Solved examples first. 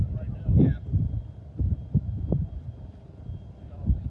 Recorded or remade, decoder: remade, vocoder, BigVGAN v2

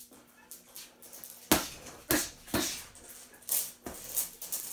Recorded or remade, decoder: recorded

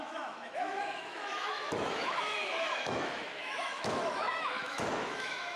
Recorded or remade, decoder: remade, autoencoder, DAC-VAE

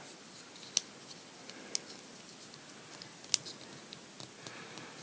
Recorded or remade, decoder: recorded